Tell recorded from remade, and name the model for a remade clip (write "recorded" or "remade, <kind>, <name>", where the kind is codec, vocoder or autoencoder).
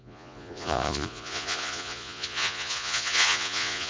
remade, vocoder, Vocos